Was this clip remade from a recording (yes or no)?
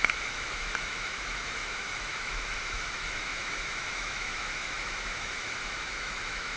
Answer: yes